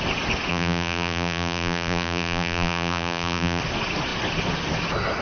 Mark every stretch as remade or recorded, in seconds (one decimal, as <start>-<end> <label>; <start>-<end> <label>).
0.0-0.5 recorded; 0.5-3.6 remade; 3.6-5.2 recorded